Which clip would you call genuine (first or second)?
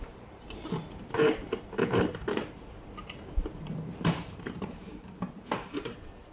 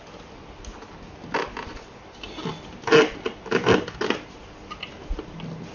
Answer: second